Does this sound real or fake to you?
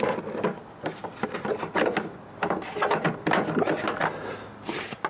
real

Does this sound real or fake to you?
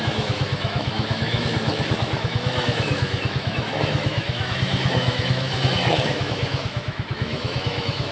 fake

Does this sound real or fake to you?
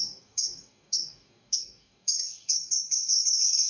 fake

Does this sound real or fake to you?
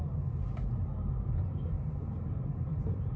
fake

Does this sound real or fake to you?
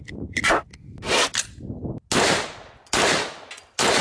real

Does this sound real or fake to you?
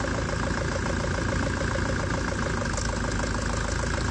real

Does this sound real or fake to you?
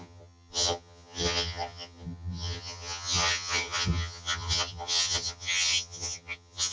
fake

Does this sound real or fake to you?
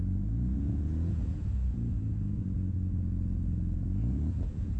fake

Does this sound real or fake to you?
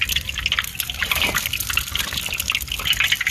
real